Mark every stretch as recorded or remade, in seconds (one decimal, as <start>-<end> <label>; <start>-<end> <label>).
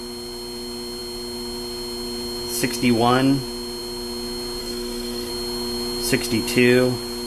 0.0-4.6 recorded; 4.6-5.3 remade; 5.3-7.3 recorded